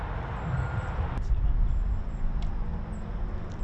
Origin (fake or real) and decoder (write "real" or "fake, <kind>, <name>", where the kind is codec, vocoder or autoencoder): real